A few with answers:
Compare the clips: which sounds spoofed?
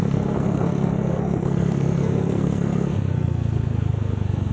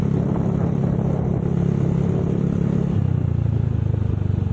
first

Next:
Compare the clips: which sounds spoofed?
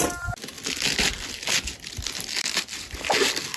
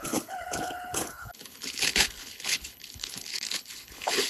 second